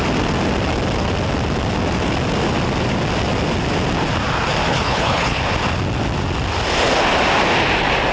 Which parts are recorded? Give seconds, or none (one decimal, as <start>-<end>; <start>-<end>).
0.0-4.7; 5.4-8.1

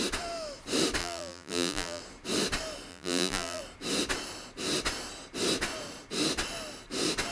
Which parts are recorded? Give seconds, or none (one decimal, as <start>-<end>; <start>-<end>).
0.0-1.0; 2.0-2.9; 3.6-7.3

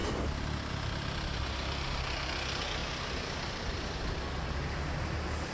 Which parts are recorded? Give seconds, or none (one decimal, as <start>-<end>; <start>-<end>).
0.0-5.5